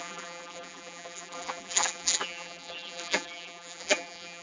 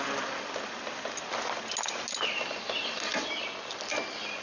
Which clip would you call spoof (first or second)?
first